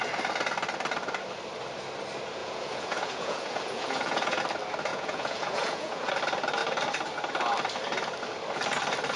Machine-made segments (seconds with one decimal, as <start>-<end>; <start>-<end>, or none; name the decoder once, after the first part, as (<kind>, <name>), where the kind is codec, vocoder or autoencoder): 2.4-4.4 (vocoder, Vocos); 4.9-6.1